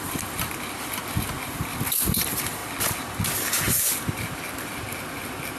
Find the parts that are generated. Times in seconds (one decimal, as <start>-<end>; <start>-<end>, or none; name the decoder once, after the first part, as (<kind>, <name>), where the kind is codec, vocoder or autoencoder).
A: 0.0-2.6 (vocoder, BigVGAN v2); 3.9-5.6